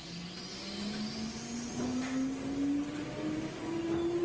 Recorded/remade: recorded